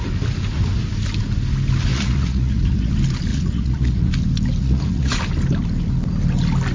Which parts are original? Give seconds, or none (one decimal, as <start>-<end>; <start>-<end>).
0.0-1.9; 2.9-3.3; 4.1-4.6; 5.2-6.7